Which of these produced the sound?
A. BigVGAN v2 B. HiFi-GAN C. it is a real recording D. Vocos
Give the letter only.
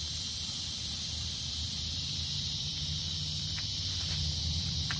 A